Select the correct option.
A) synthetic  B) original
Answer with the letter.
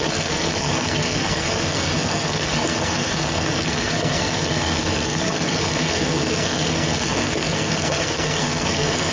A